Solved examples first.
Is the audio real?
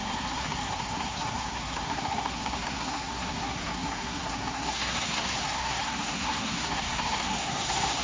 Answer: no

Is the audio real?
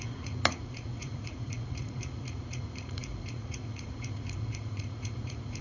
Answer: no